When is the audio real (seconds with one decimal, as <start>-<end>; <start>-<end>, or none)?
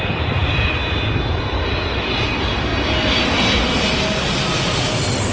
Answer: 0.8-1.4; 2.7-5.3